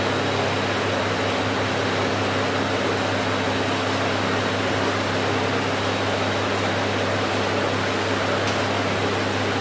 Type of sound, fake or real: real